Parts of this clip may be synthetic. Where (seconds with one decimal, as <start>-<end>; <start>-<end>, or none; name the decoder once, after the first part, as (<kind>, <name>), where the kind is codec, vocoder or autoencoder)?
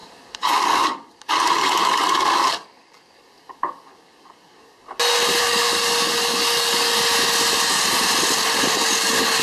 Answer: 0.0-4.8 (codec, DAC); 5.4-7.0; 8.7-9.4